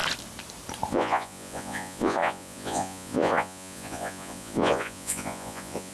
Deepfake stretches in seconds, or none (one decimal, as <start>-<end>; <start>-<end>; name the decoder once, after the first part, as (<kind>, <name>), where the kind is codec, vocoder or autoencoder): 0.9-5.9 (vocoder, Vocos)